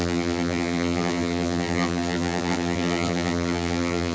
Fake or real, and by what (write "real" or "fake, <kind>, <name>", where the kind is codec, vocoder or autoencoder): fake, vocoder, BigVGAN v2